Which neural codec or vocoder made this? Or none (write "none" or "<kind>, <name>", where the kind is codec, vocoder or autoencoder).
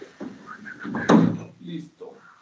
none